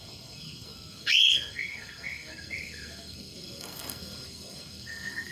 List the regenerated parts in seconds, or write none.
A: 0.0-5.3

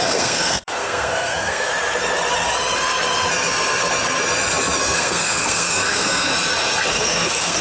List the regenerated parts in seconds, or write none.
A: 0.0-1.7; 4.8-6.3; 6.9-7.6

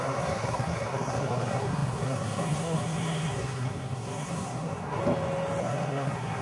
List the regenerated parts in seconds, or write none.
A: 0.0-5.0; 5.6-6.4